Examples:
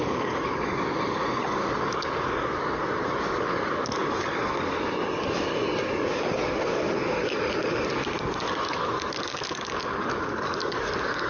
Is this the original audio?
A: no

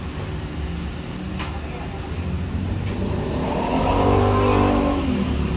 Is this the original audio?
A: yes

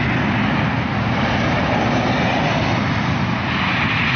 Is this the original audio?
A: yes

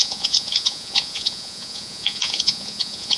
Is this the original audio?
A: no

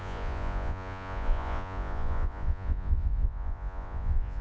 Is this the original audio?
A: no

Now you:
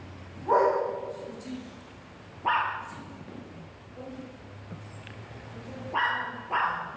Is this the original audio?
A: yes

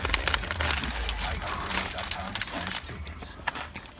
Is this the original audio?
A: yes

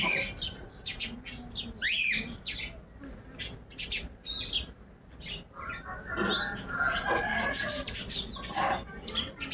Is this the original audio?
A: yes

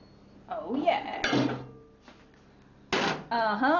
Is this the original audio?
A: yes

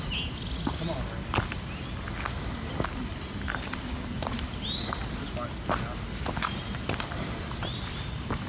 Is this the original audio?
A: yes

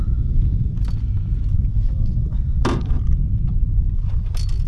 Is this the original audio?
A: no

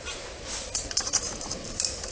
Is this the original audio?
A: yes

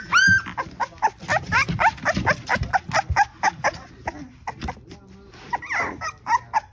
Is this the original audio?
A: yes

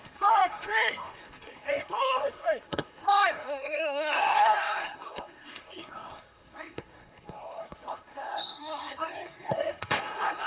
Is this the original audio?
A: no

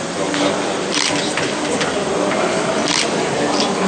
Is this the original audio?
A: yes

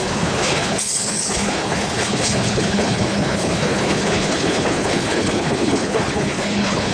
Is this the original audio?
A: no